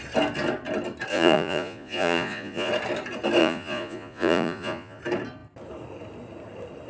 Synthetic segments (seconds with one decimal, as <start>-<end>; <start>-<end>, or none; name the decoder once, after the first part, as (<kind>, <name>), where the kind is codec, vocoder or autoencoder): 1.1-2.7 (vocoder, Vocos); 3.4-5.0